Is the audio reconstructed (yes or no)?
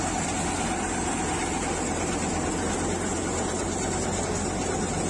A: no